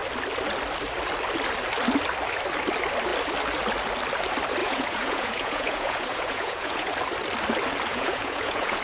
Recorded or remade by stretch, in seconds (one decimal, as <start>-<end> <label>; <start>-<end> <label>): 0.0-4.6 recorded; 4.6-6.9 remade; 6.9-7.9 recorded; 7.9-8.8 remade